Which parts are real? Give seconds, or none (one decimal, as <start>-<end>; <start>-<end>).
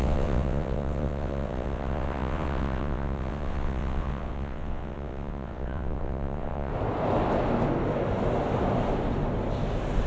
6.7-10.1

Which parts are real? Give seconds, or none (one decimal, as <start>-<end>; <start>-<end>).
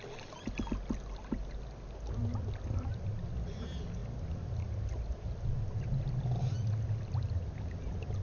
0.0-8.2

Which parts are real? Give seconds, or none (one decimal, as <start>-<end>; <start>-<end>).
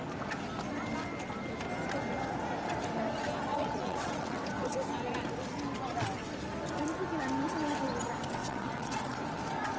0.0-3.5; 4.4-8.4; 9.2-9.8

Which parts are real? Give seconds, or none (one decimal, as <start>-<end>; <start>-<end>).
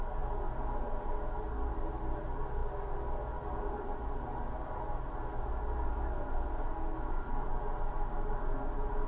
0.0-9.1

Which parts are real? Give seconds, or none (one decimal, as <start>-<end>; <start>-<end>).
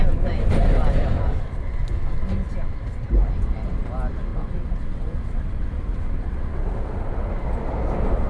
0.0-4.3; 7.3-8.3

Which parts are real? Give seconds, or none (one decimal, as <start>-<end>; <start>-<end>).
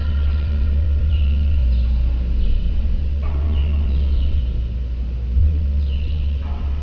1.6-2.4; 4.4-5.4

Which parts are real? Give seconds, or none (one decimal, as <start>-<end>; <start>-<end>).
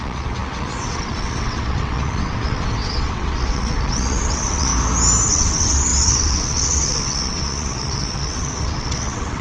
4.7-5.3